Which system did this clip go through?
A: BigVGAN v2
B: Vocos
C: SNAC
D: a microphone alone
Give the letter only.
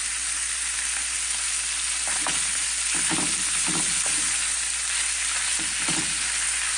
D